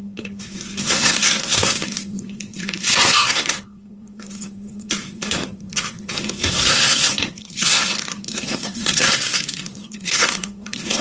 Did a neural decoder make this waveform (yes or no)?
yes